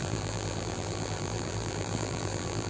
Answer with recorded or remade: remade